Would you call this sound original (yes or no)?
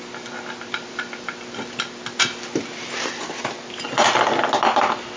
yes